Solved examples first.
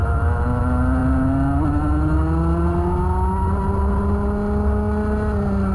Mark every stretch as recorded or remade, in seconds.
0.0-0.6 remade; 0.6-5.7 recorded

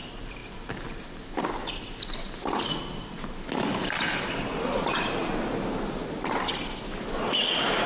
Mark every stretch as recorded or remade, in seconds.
0.0-7.9 recorded

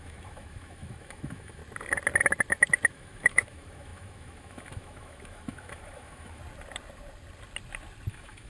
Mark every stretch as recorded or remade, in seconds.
0.0-1.6 remade; 1.6-2.9 recorded; 2.9-6.4 remade; 6.4-8.1 recorded; 8.1-8.5 remade

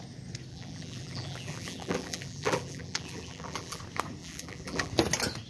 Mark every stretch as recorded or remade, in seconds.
0.0-0.5 recorded; 0.5-3.8 remade; 3.8-4.2 recorded; 4.2-4.9 remade; 4.9-5.5 recorded